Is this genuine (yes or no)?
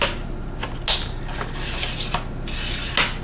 yes